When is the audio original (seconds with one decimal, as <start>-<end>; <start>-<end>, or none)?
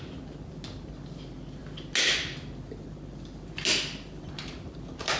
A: 0.0-5.2